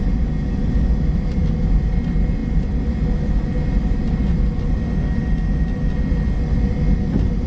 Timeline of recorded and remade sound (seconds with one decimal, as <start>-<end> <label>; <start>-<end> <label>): 0.0-7.5 recorded